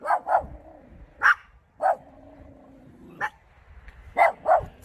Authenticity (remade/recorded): recorded